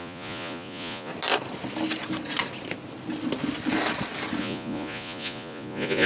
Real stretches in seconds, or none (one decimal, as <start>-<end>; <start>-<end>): 1.1-4.4